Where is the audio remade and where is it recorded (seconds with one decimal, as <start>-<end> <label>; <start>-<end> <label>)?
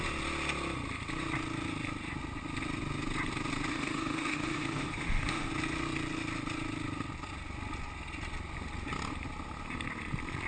0.0-3.7 recorded; 3.7-5.5 remade; 5.5-10.5 recorded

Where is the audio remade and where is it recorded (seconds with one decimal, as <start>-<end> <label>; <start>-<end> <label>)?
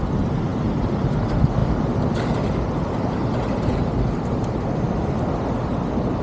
0.0-6.2 recorded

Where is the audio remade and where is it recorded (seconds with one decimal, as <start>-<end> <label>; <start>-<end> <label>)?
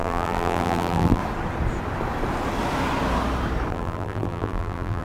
0.0-1.2 remade; 1.2-3.7 recorded; 3.7-5.0 remade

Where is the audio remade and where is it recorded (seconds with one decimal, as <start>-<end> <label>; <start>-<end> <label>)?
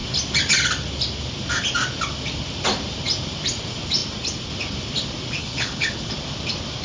0.0-5.4 recorded; 5.4-6.1 remade; 6.1-6.8 recorded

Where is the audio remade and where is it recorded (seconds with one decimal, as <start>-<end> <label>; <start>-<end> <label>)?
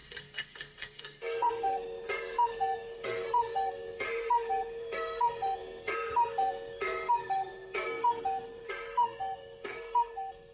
0.0-10.5 remade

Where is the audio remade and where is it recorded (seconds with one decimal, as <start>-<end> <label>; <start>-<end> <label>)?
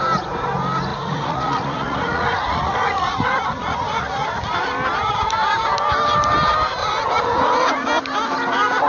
0.0-0.9 recorded; 0.9-4.4 remade; 4.4-6.8 recorded; 6.8-7.7 remade; 7.7-8.9 recorded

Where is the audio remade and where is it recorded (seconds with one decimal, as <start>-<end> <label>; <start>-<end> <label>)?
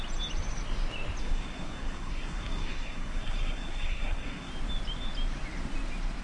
0.0-1.2 recorded; 1.2-4.5 remade; 4.5-6.2 recorded